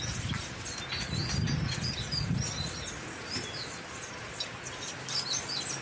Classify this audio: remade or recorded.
recorded